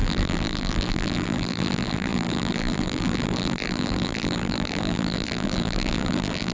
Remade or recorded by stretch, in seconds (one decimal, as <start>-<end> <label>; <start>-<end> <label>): 0.0-6.5 remade